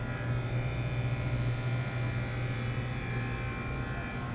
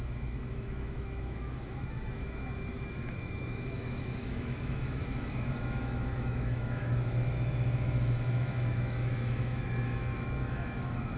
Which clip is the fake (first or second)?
second